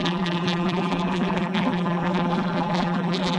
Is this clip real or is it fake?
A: fake